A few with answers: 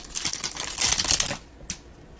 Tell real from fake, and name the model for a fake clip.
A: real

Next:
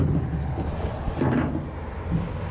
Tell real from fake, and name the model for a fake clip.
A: real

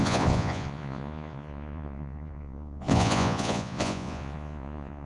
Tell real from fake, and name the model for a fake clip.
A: fake, vocoder, Vocos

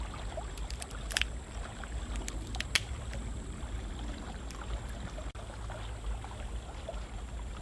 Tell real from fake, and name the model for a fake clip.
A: real